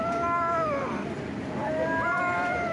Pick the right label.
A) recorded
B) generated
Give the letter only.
B